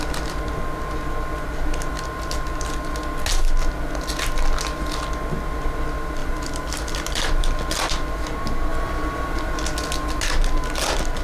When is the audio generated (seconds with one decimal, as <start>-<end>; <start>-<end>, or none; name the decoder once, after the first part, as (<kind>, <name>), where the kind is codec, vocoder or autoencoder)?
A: 6.2-7.5 (vocoder, BigVGAN v2)